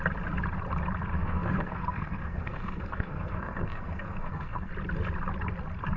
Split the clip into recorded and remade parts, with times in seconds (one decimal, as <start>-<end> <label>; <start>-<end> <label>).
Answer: 0.0-1.1 recorded; 1.1-4.7 remade; 4.7-6.0 recorded